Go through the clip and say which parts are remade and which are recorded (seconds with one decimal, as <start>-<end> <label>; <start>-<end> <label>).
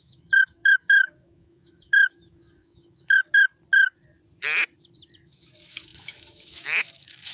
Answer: 0.0-3.2 remade; 3.2-5.2 recorded; 5.2-7.3 remade